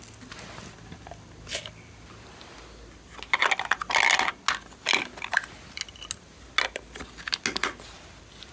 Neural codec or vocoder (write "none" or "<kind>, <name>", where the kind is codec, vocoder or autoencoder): none